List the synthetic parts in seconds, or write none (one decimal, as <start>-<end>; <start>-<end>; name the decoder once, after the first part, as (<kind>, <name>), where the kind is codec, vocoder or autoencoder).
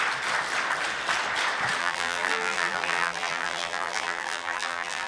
1.8-5.1 (vocoder, BigVGAN v2)